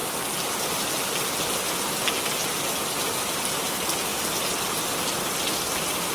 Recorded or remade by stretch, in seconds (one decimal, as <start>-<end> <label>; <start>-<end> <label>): 0.0-6.1 recorded

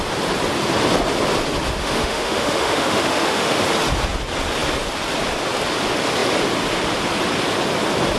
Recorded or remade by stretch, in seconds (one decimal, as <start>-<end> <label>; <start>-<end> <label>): 0.0-1.8 recorded; 1.8-3.6 remade; 3.6-8.2 recorded